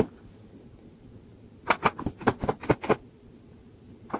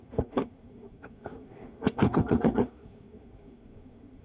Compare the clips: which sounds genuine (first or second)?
first